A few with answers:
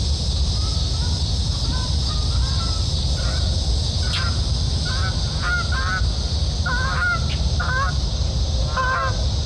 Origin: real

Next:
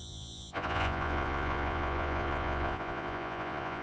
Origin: fake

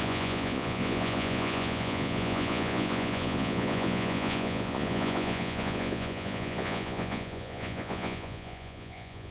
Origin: fake